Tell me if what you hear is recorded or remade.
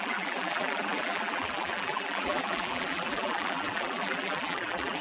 remade